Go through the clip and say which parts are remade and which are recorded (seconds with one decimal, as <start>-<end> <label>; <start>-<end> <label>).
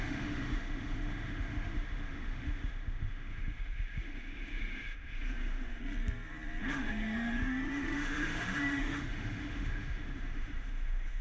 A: 0.0-5.8 remade; 5.8-6.6 recorded; 6.6-11.2 remade